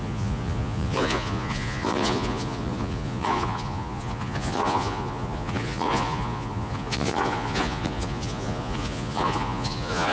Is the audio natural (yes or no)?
no